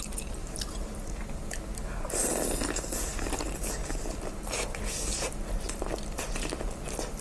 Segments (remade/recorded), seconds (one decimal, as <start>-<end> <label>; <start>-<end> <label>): 0.0-0.4 recorded; 0.4-1.6 remade; 1.6-7.2 recorded